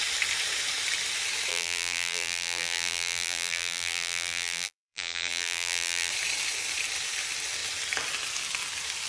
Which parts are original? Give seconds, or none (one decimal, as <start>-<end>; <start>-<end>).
0.0-1.5; 6.1-9.1